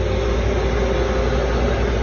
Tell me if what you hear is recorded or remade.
recorded